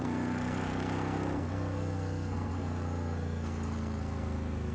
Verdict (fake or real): fake